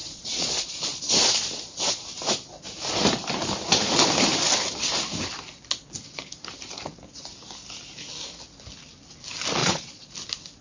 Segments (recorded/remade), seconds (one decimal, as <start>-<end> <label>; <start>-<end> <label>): 0.0-1.0 remade; 1.0-9.6 recorded; 9.6-10.1 remade; 10.1-10.6 recorded